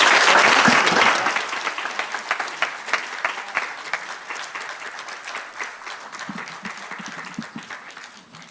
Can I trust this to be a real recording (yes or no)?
yes